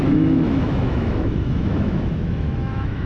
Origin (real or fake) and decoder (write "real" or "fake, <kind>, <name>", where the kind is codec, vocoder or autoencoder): fake, autoencoder, DAC-VAE